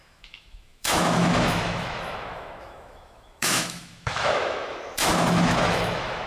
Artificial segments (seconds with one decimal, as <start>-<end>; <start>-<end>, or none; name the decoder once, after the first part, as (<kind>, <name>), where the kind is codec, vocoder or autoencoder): 0.0-6.3 (autoencoder, DAC-VAE)